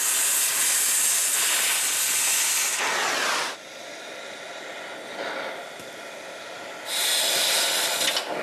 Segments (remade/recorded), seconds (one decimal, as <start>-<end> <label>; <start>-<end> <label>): 0.0-8.4 recorded